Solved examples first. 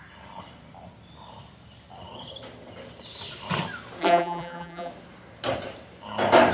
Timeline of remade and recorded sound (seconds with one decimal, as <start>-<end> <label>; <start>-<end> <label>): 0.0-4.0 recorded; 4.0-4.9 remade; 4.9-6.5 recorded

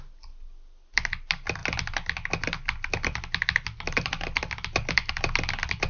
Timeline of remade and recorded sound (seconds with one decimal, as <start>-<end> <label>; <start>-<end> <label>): 0.0-5.9 recorded

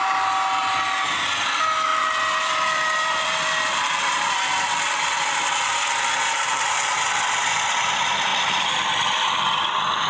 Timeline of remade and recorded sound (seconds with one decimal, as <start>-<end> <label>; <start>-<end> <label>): 0.0-1.9 recorded; 1.9-6.7 remade; 6.7-8.3 recorded; 8.3-9.4 remade; 9.4-10.1 recorded

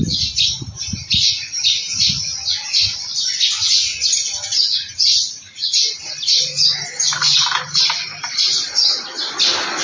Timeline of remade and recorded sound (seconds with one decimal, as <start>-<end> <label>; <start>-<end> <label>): 0.0-4.5 recorded; 4.5-5.6 remade; 5.6-7.3 recorded; 7.3-8.2 remade; 8.2-9.8 recorded